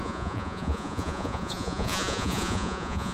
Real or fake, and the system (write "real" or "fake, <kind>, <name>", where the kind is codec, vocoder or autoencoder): fake, vocoder, Vocos